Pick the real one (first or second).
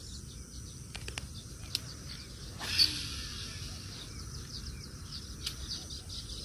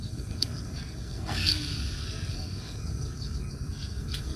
first